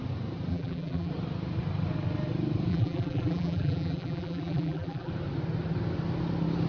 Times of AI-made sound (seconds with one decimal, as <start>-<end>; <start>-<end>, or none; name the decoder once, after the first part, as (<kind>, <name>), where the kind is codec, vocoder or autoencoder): 0.5-1.1 (vocoder, BigVGAN v2); 2.7-5.1